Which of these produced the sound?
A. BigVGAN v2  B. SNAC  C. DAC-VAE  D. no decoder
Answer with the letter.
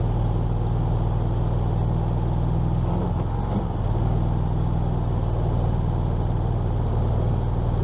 D